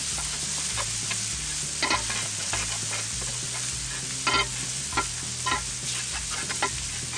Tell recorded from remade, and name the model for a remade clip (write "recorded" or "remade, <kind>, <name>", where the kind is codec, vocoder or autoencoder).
recorded